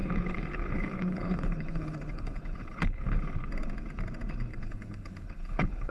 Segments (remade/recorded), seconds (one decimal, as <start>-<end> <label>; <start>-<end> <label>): 0.0-3.5 remade; 3.5-4.5 recorded; 4.5-5.9 remade